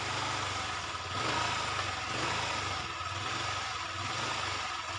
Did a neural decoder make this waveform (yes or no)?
no